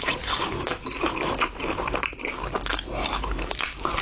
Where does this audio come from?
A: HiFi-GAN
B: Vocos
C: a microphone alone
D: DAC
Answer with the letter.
C